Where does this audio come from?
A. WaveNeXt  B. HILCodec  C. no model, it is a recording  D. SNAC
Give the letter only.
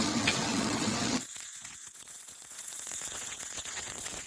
A